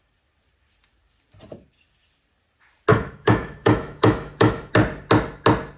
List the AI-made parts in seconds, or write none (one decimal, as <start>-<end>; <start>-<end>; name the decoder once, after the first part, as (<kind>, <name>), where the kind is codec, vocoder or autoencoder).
2.9-4.7 (autoencoder, DAC-VAE)